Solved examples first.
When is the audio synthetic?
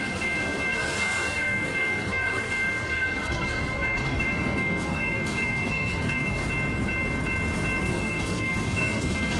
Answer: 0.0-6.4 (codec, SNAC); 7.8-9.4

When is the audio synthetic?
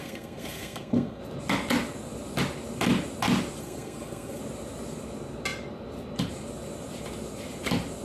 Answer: 0.0-1.2 (codec, SNAC); 3.6-4.4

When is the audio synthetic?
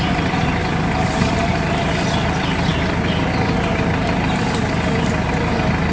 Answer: 0.6-1.9 (vocoder, BigVGAN v2)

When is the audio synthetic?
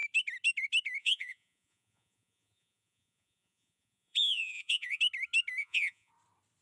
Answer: 1.0-5.0 (vocoder, Vocos); 5.6-6.1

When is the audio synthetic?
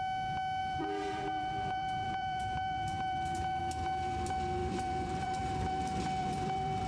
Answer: 0.6-3.6 (vocoder, BigVGAN v2); 4.6-5.8; 6.2-6.9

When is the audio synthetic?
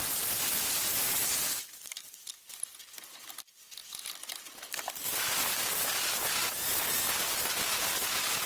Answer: none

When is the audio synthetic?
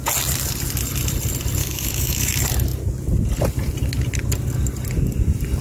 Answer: 1.6-2.3 (codec, DAC)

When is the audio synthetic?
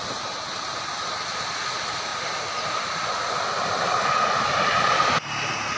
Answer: 2.1-5.3 (vocoder, BigVGAN v2)